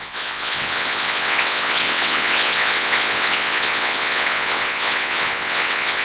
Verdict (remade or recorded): remade